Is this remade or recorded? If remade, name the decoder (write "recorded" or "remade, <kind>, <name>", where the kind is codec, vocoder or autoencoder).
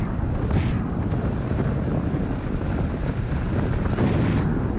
recorded